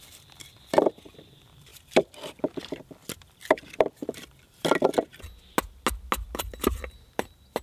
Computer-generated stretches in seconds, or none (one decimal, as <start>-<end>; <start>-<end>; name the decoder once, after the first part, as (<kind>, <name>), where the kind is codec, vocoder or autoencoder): 0.0-1.7 (vocoder, BigVGAN v2); 2.7-5.1; 6.4-7.6